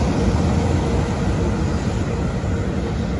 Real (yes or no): yes